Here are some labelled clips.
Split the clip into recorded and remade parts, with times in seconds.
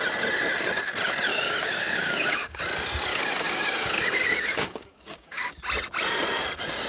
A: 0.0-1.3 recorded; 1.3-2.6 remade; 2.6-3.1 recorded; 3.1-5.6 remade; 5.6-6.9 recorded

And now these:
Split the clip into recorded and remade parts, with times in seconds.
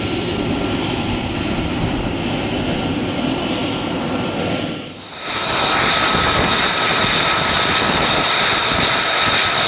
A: 0.0-9.7 recorded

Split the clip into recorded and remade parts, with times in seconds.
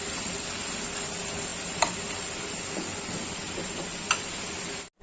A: 0.0-5.0 recorded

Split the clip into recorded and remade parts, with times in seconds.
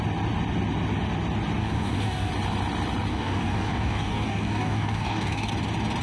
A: 0.0-1.6 recorded; 1.6-2.3 remade; 2.3-3.1 recorded; 3.1-5.5 remade; 5.5-6.0 recorded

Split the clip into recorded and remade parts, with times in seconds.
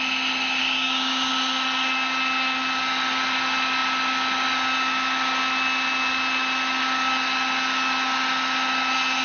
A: 0.0-0.6 recorded; 0.6-1.3 remade; 1.3-9.2 recorded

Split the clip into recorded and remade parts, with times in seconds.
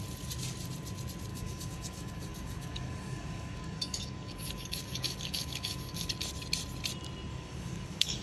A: 0.0-1.3 recorded; 1.3-6.1 remade; 6.1-7.3 recorded; 7.3-8.2 remade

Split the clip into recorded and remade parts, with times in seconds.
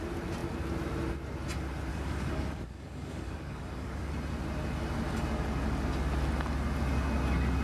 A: 0.0-1.9 recorded; 1.9-4.1 remade; 4.1-7.6 recorded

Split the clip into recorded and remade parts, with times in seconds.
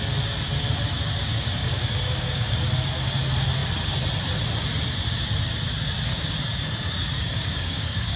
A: 0.0-1.6 recorded; 1.6-2.7 remade; 2.7-6.1 recorded; 6.1-8.2 remade